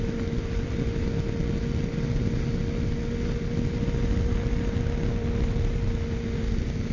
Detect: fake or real real